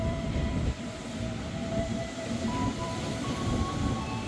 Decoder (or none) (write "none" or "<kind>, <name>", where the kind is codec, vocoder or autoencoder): vocoder, BigVGAN v2